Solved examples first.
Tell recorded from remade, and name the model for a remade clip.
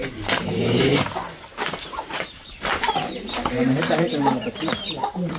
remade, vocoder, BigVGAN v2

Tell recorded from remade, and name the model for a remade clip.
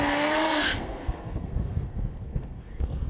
remade, codec, SNAC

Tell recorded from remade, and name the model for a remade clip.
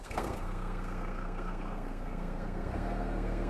remade, codec, SNAC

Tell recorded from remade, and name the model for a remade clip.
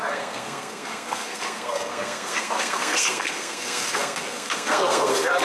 remade, codec, SNAC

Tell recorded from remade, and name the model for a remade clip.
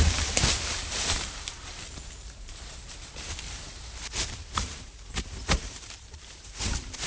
remade, vocoder, BigVGAN v2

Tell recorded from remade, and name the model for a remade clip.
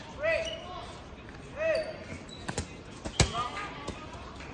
recorded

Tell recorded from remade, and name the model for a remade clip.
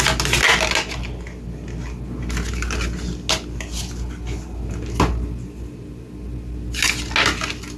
recorded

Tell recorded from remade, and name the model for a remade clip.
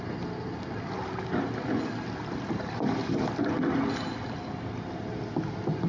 recorded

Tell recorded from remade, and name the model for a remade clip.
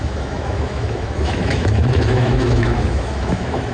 remade, autoencoder, DAC-VAE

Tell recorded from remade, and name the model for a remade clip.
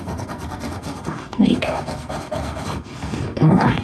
remade, codec, SNAC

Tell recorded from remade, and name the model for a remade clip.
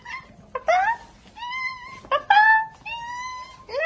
recorded